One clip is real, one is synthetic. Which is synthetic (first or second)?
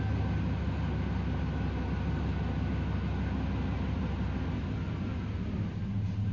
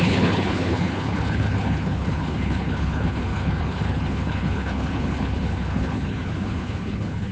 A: second